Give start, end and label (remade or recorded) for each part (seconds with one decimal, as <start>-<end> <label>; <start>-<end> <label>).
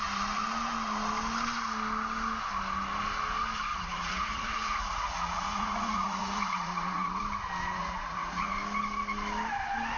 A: 0.0-3.7 recorded; 3.7-7.2 remade; 7.2-7.8 recorded; 7.8-8.5 remade; 8.5-10.0 recorded